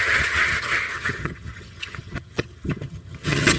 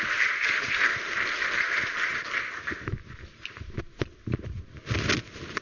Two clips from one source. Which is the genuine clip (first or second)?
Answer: second